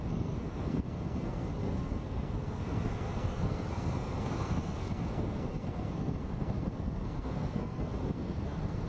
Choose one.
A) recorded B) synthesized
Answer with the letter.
B